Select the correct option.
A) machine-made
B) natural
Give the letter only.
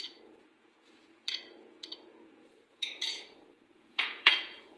A